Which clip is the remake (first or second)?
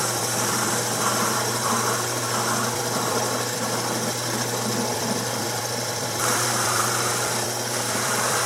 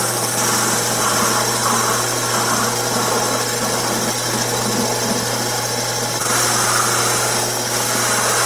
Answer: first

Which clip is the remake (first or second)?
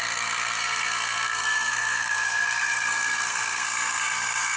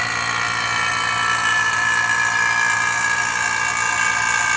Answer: first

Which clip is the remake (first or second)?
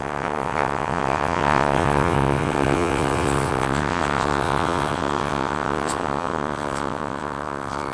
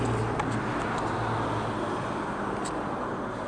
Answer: first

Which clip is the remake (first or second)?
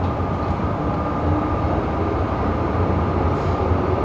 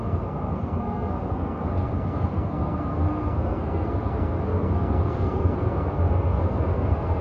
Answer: second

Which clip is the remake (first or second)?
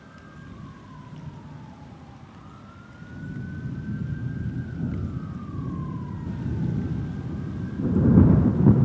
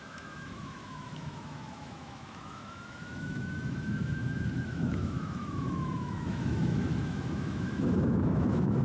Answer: second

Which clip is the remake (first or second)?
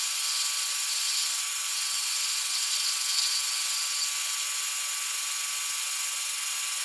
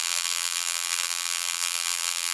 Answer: second